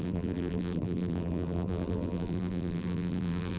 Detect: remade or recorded remade